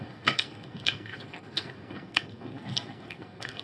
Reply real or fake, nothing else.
fake